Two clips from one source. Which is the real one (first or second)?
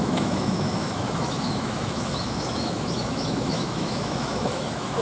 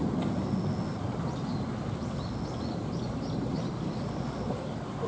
second